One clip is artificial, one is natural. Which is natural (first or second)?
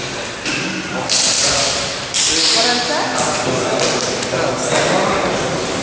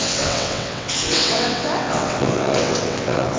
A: first